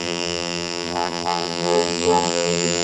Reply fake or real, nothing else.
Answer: fake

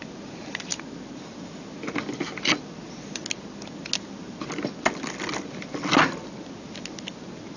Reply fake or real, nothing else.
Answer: real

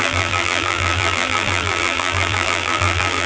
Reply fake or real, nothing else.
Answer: fake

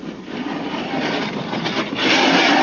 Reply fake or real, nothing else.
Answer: fake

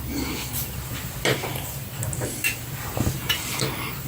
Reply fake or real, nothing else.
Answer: fake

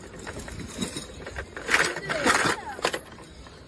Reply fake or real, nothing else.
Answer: real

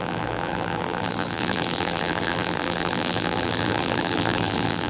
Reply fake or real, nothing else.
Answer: fake